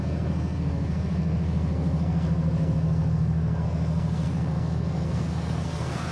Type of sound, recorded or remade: remade